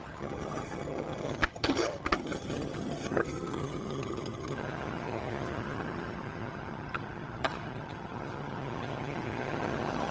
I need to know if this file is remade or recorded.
remade